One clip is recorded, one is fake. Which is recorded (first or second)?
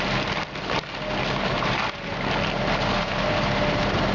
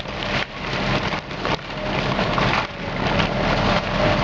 first